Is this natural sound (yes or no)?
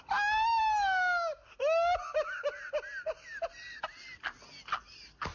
yes